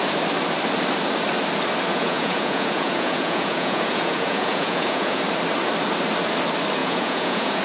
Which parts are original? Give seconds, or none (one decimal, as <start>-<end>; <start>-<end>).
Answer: 0.0-1.9; 5.2-6.8